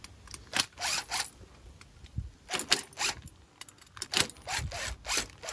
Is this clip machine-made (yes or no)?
no